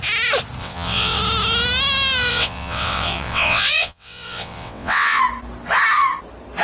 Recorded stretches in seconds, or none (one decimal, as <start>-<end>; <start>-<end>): 0.0-0.6; 1.2-2.3; 5.2-6.6